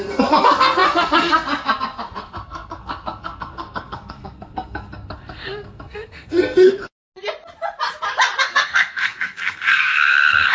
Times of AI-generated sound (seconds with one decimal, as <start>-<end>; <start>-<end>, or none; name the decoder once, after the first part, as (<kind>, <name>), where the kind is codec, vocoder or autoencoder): 0.0-6.8 (codec, SNAC); 8.4-10.5